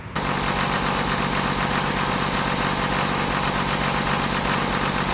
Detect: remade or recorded recorded